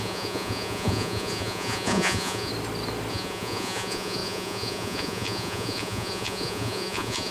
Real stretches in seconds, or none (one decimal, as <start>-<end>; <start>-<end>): 2.5-3.1